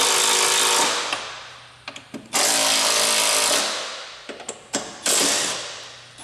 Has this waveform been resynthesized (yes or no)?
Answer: no